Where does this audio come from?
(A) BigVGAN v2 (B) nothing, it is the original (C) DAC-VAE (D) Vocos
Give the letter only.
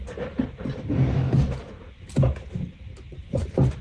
B